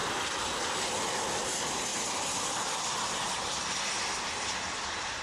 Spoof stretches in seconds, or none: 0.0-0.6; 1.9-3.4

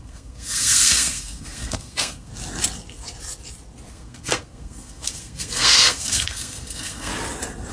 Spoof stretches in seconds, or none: 0.0-2.3; 3.9-7.1

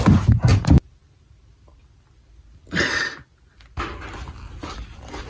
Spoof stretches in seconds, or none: 0.5-1.8

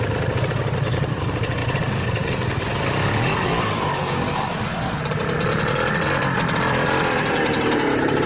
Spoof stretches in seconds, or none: 0.0-4.7; 6.2-8.3

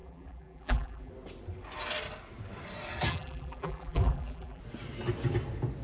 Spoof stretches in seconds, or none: 0.0-1.1; 3.1-4.6

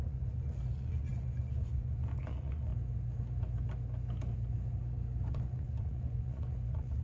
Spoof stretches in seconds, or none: 0.0-2.7; 5.3-7.0

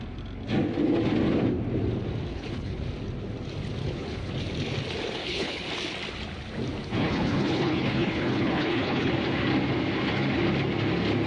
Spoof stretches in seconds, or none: 2.3-2.8; 3.8-4.3; 5.2-5.7; 6.8-9.1

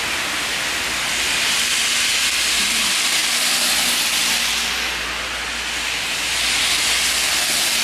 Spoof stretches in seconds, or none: none